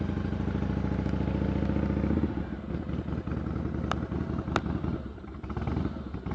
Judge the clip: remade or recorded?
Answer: recorded